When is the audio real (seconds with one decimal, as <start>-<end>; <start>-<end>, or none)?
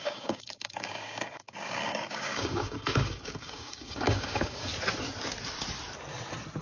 4.7-6.6